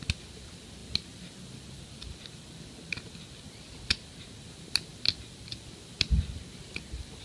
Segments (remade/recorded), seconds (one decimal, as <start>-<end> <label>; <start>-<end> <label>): 0.0-7.2 recorded